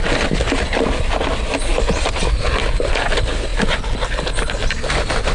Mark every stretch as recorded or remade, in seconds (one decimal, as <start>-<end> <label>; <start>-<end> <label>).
0.0-5.3 recorded